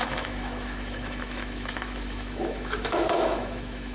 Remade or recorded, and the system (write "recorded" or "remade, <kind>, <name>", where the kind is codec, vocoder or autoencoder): remade, autoencoder, DAC-VAE